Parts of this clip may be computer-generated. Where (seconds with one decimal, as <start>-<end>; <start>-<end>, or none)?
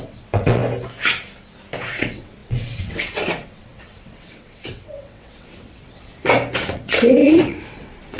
0.0-0.6; 1.8-6.1; 6.7-8.2